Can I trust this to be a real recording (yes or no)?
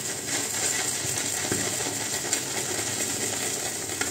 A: yes